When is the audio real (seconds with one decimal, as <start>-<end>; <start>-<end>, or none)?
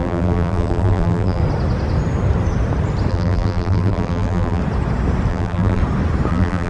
1.4-3.1; 4.6-5.3; 5.8-6.3